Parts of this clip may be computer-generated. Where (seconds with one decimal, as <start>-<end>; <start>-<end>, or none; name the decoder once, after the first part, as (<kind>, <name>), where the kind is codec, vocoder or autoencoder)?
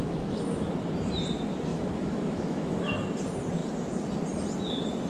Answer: 0.0-0.7 (autoencoder, DAC-VAE); 1.7-2.9